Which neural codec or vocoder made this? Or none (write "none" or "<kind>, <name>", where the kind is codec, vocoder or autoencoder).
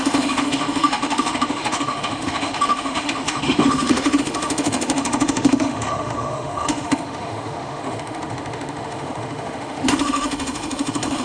autoencoder, DAC-VAE